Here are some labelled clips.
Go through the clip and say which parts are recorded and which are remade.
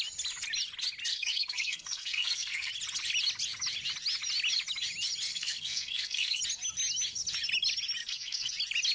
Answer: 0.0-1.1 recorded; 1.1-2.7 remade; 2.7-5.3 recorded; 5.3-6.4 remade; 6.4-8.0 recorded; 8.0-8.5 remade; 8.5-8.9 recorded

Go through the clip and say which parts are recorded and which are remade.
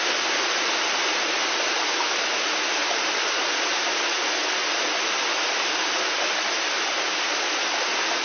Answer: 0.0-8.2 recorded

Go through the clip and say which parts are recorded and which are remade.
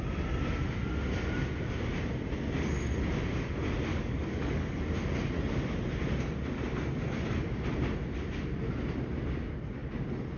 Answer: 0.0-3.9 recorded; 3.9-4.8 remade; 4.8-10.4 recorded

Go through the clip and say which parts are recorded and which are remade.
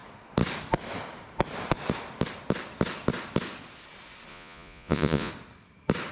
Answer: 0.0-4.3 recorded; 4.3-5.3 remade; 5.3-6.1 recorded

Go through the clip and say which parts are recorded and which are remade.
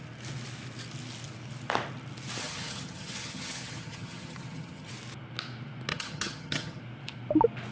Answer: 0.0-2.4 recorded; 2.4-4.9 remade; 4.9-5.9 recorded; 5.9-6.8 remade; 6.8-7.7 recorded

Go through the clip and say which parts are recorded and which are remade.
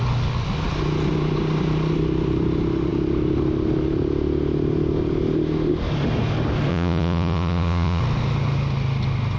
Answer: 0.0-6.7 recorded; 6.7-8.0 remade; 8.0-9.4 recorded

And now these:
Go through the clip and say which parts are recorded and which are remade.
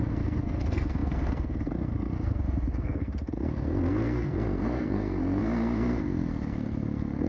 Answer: 0.0-7.3 remade